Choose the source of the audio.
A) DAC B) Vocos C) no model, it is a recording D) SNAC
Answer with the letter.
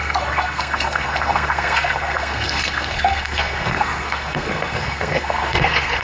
D